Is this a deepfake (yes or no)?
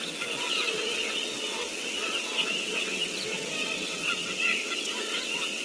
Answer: yes